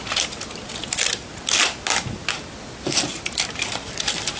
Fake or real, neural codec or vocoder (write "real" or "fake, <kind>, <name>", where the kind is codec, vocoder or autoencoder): real